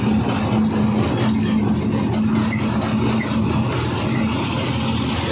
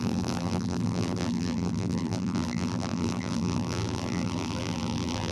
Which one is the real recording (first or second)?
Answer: first